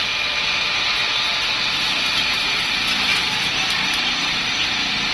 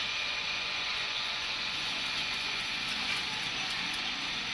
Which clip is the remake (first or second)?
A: second